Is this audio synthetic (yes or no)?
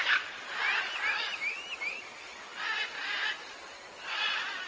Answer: no